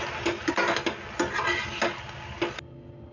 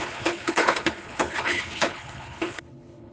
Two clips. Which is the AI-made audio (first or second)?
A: second